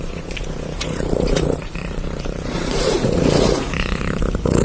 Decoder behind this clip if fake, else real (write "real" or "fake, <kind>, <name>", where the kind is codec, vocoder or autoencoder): fake, vocoder, Vocos